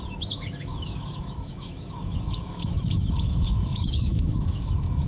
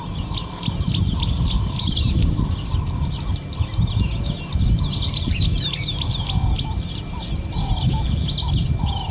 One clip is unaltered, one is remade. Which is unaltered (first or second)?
second